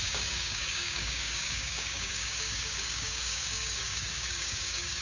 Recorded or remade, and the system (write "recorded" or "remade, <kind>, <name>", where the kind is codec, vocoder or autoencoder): remade, codec, DAC